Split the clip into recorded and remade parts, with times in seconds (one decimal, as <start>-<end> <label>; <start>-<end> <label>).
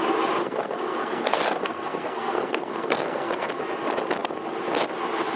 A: 0.0-0.4 recorded; 0.4-3.6 remade; 3.6-5.4 recorded